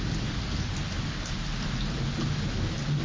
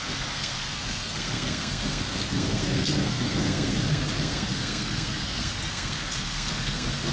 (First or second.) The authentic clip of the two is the first